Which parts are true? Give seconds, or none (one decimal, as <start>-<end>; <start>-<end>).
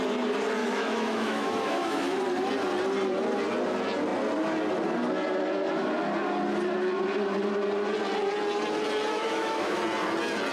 0.0-0.6; 2.2-9.1; 9.8-10.5